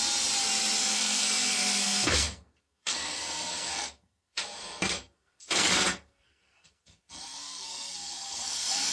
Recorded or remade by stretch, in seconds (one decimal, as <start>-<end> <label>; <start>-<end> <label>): 0.0-0.8 recorded; 0.8-8.9 remade